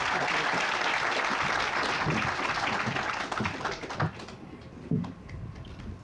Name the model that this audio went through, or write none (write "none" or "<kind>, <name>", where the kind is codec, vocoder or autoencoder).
none